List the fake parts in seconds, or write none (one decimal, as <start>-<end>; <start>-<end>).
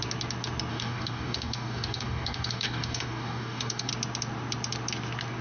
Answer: 0.7-3.9